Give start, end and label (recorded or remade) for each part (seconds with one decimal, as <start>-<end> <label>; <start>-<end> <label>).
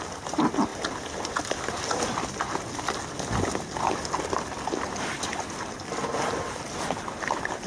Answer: 0.0-7.7 recorded